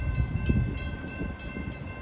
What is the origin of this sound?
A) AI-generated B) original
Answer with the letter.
B